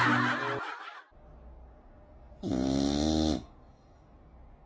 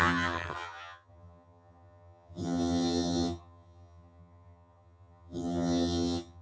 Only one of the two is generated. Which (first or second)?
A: second